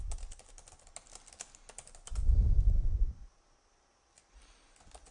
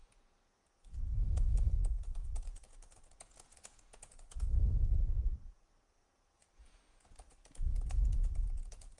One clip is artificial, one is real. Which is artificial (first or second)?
second